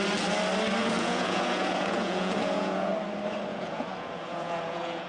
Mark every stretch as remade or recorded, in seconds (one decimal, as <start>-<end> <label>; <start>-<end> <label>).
0.0-0.8 recorded; 0.8-2.9 remade; 2.9-3.5 recorded; 3.5-5.1 remade